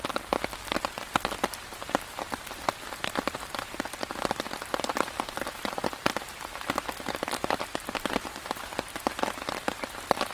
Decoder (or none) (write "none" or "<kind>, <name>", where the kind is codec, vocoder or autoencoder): none